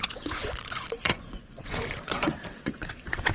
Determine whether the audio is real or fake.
fake